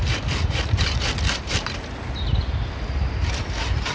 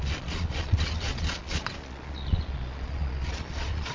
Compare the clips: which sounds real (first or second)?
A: first